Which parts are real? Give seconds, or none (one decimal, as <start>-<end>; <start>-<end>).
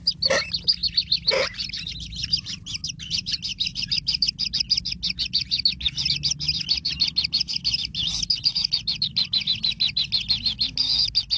0.0-11.4